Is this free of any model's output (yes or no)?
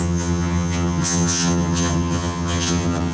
no